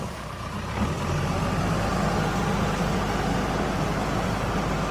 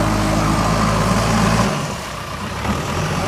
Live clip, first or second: first